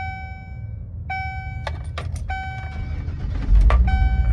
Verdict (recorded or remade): recorded